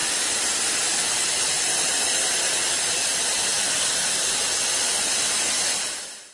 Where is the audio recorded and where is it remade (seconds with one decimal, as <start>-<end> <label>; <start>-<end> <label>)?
0.0-6.3 recorded